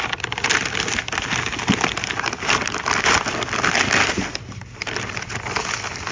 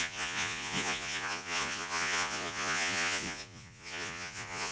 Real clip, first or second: first